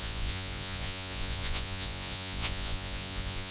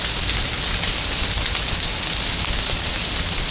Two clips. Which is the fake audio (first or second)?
first